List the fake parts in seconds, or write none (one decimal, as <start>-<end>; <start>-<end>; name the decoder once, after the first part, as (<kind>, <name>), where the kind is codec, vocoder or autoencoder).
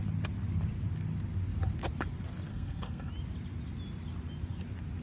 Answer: 2.5-3.1 (codec, SNAC)